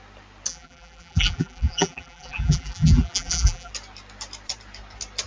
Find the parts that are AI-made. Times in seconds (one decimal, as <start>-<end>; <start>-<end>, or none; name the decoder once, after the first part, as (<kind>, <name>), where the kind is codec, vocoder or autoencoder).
0.5-3.7 (vocoder, BigVGAN v2)